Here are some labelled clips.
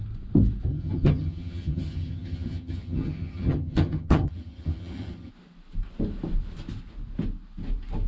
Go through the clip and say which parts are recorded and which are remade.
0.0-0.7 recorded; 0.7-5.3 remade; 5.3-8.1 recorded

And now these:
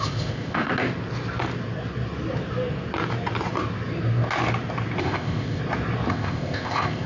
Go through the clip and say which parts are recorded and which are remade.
0.0-0.7 remade; 0.7-5.0 recorded; 5.0-5.6 remade; 5.6-6.1 recorded; 6.1-7.1 remade

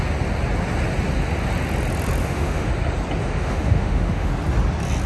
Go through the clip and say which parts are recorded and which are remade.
0.0-2.2 recorded; 2.2-2.7 remade; 2.7-3.2 recorded; 3.2-4.3 remade; 4.3-5.1 recorded